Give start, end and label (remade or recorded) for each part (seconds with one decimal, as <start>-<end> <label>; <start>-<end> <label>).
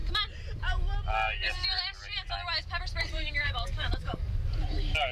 0.0-3.1 recorded; 3.1-4.3 remade; 4.3-5.1 recorded